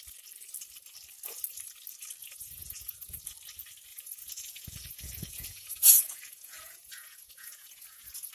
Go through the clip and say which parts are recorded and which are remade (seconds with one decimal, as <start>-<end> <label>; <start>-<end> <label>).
0.0-2.2 recorded; 2.2-3.2 remade; 3.2-3.9 recorded; 3.9-8.3 remade